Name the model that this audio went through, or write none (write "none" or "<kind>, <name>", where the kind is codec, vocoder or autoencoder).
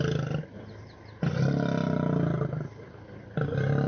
none